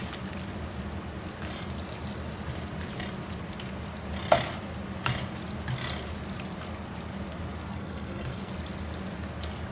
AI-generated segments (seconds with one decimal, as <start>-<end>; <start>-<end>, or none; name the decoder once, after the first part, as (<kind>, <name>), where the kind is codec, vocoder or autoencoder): 7.7-8.5 (codec, SNAC)